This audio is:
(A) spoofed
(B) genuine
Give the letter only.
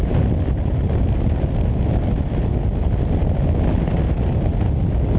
B